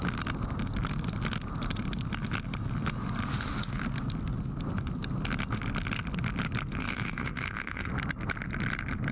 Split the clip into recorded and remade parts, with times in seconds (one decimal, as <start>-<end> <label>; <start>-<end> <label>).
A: 0.0-3.3 recorded; 3.3-3.8 remade; 3.8-6.8 recorded; 6.8-7.9 remade; 7.9-9.1 recorded